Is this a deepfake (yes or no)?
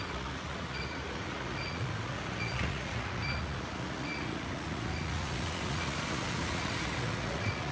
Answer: yes